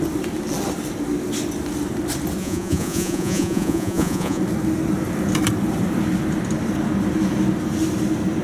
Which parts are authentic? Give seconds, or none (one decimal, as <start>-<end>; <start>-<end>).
0.0-2.4; 4.4-8.4